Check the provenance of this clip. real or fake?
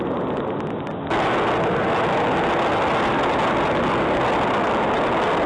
real